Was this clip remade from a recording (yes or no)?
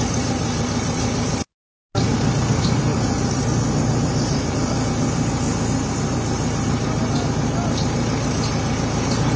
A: no